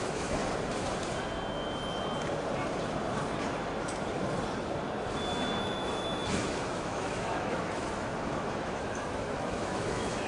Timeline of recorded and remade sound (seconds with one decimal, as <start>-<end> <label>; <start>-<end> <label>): 0.0-0.4 remade; 0.4-5.6 recorded; 5.6-10.3 remade